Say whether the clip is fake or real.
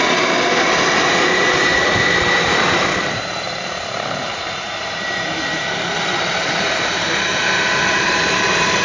fake